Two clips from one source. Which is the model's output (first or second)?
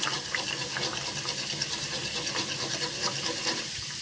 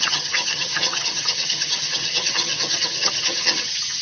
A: second